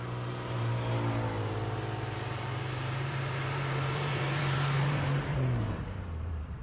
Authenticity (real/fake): fake